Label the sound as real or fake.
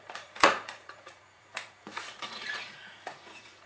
fake